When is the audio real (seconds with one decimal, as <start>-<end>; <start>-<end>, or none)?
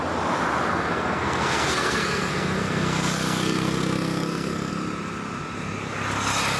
0.0-0.7; 4.7-6.6